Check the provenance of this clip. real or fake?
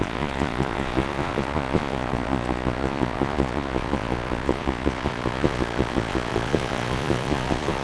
fake